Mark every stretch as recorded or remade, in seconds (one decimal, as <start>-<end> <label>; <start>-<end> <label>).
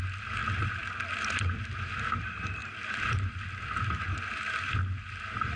0.0-5.6 recorded